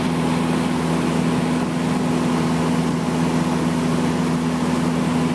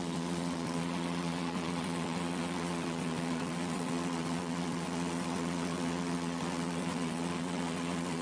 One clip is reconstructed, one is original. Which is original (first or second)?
first